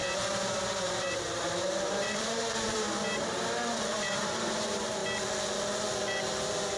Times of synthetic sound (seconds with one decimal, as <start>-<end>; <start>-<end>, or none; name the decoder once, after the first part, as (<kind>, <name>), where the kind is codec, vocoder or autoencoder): 0.0-5.0 (vocoder, BigVGAN v2)